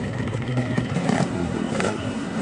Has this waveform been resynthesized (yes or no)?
yes